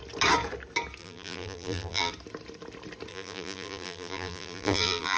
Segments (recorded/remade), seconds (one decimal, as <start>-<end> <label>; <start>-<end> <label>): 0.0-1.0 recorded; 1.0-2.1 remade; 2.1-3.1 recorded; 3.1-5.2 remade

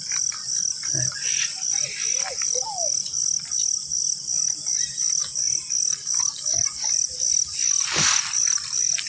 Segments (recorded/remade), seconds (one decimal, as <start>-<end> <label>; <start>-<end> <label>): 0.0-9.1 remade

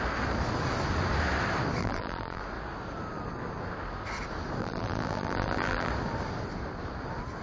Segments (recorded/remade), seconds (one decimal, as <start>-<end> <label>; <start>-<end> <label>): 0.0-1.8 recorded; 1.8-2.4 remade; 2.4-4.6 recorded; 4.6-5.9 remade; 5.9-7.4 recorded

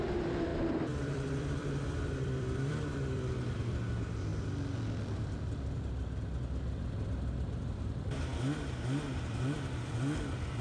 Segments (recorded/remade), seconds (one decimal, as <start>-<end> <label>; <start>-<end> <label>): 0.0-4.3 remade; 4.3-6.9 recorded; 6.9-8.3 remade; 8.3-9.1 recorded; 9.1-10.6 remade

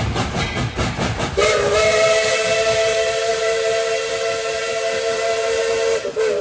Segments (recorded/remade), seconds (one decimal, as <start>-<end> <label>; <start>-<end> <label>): 0.0-6.4 remade